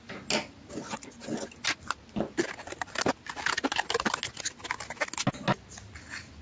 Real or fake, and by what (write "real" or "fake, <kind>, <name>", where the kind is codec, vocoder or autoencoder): real